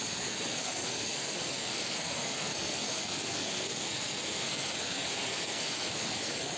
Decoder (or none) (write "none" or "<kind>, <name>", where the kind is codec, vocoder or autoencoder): codec, SNAC